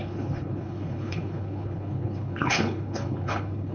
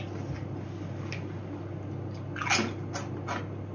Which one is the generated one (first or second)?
first